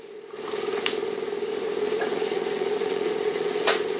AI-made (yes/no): yes